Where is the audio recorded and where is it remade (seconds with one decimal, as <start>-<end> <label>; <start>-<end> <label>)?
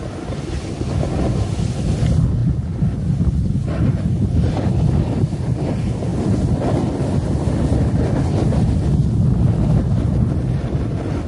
0.0-11.3 recorded